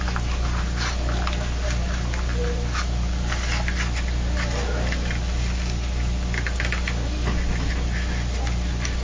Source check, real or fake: real